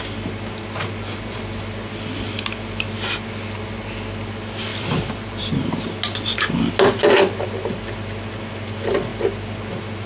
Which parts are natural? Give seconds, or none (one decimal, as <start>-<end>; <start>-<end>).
0.0-4.7; 5.5-10.1